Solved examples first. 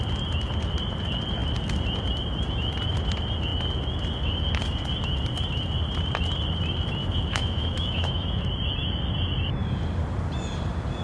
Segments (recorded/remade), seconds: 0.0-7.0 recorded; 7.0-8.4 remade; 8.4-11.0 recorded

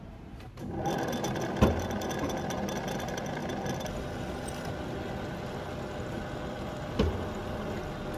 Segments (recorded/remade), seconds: 0.0-8.2 recorded

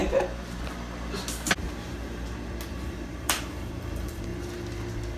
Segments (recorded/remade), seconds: 0.0-2.7 recorded; 2.7-4.3 remade; 4.3-5.2 recorded

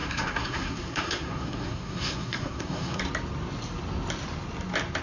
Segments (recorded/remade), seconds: 0.0-3.0 remade; 3.0-5.0 recorded

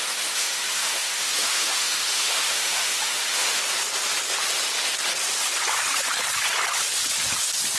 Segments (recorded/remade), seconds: 0.0-3.6 remade; 3.6-7.8 recorded

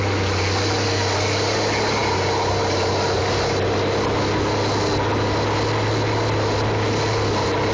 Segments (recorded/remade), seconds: 0.0-7.7 recorded

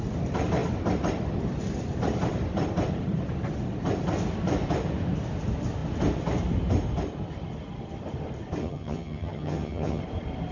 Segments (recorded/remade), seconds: 0.0-8.6 recorded; 8.6-10.0 remade; 10.0-10.5 recorded

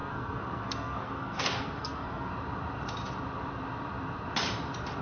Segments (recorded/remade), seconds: 0.0-2.3 remade; 2.3-5.0 recorded